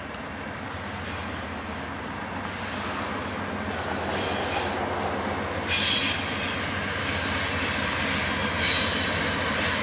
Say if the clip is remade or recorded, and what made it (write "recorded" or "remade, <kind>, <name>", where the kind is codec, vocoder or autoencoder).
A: recorded